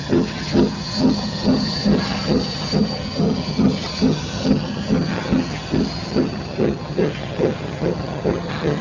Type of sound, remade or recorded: remade